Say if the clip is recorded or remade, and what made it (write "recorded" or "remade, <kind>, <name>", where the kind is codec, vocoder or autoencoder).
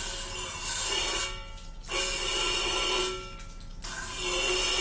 recorded